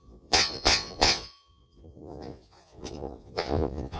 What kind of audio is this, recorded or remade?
remade